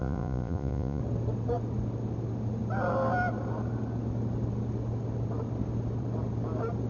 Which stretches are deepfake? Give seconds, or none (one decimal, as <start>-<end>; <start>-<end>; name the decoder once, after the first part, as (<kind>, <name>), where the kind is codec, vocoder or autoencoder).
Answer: 0.0-1.0 (vocoder, Vocos)